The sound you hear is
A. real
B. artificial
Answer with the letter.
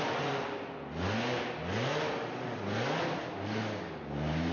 A